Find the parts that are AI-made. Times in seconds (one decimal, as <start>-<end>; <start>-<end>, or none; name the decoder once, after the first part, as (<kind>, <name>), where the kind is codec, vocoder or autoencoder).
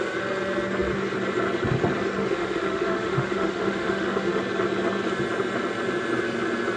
2.2-4.4 (autoencoder, DAC-VAE)